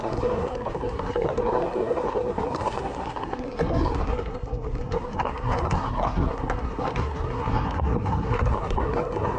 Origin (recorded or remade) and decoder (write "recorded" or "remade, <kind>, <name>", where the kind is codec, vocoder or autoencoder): remade, codec, SNAC